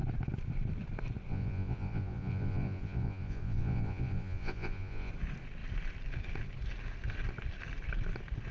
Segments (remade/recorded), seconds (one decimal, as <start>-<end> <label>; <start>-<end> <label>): 0.0-1.3 recorded; 1.3-5.1 remade; 5.1-8.5 recorded